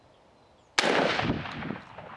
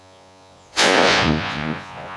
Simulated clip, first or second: second